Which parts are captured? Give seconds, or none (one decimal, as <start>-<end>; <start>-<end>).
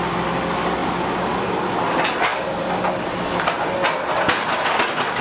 0.0-5.2